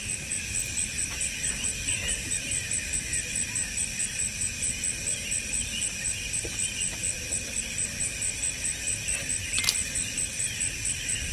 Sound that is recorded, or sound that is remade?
recorded